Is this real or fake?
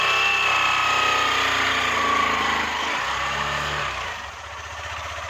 real